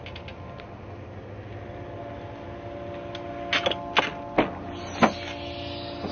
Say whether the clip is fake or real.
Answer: real